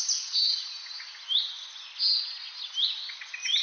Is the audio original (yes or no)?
yes